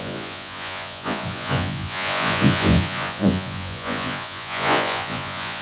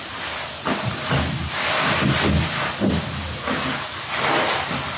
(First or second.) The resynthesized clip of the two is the first